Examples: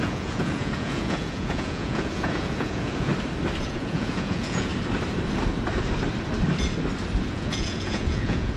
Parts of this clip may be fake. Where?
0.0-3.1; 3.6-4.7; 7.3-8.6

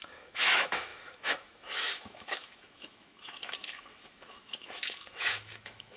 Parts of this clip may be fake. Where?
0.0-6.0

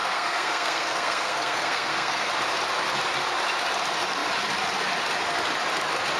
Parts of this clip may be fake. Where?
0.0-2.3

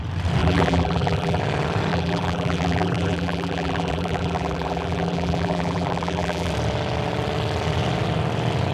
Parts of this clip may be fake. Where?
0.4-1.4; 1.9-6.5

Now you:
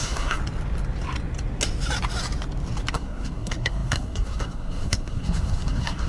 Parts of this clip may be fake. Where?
0.0-0.4; 2.9-6.1

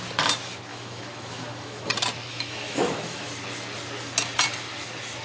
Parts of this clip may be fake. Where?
0.7-1.9; 2.3-3.3

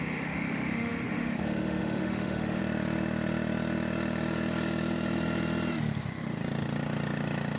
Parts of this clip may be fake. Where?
0.0-2.6